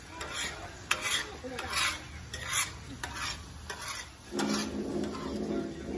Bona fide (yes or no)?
yes